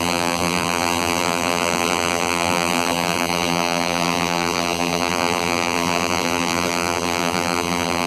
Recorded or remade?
remade